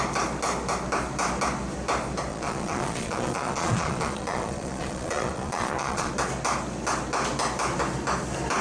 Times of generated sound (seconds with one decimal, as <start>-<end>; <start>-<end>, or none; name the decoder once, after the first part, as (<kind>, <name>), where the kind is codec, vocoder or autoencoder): 2.3-6.1 (vocoder, Vocos)